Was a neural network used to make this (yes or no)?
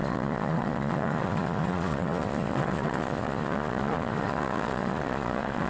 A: yes